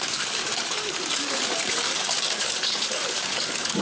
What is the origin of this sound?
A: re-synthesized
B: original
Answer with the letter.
A